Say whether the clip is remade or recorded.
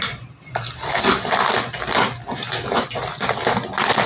recorded